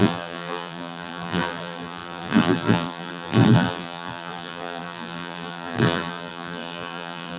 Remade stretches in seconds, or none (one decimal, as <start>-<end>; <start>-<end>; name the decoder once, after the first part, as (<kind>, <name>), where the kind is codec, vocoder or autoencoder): 0.0-7.4 (vocoder, BigVGAN v2)